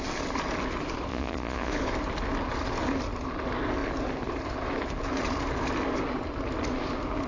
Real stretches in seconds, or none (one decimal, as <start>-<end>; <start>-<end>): 0.0-1.1; 1.7-7.3